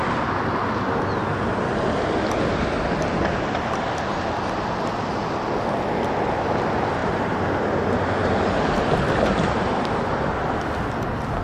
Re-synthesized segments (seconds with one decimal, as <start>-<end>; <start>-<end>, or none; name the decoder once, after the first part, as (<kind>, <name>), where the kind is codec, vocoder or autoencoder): 7.0-7.5 (vocoder, BigVGAN v2); 8.2-10.4